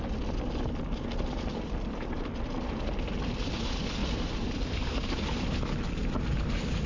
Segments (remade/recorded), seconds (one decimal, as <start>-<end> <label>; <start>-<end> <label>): 0.0-6.9 recorded